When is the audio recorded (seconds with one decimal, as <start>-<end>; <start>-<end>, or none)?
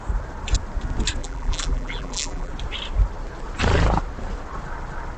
0.0-1.2; 2.5-5.2